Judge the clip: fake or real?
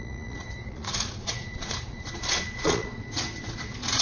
fake